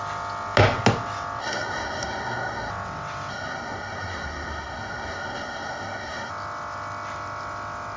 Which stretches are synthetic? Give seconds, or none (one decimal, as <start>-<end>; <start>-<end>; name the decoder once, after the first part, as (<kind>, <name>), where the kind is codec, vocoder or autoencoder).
1.4-2.7 (codec, SNAC); 3.3-6.3